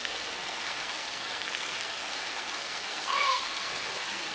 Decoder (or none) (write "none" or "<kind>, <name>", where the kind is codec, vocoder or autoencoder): codec, SNAC